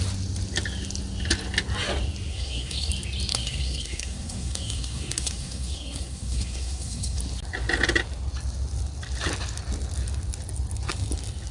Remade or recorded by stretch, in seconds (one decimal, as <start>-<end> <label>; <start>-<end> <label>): 0.0-2.3 recorded; 2.3-2.9 remade; 2.9-3.3 recorded; 3.3-7.2 remade; 7.2-11.5 recorded